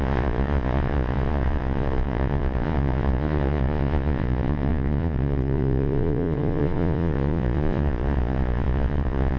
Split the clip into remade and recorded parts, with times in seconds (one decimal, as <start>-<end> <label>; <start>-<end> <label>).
0.0-9.4 remade